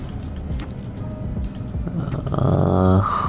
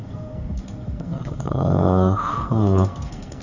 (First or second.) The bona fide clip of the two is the first